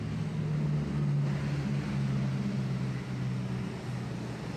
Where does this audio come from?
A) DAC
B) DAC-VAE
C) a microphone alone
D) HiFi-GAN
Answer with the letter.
C